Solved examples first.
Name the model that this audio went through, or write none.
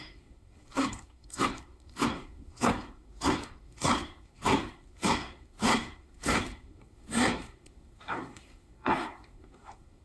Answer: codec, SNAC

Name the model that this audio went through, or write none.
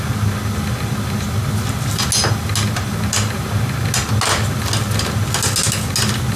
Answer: none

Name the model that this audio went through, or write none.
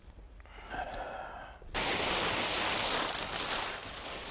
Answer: none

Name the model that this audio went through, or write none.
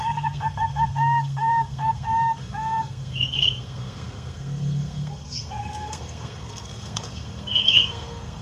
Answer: codec, SNAC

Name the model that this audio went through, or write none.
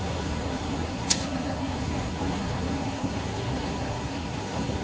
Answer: codec, SNAC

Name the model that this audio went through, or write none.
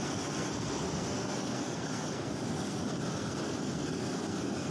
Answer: codec, SNAC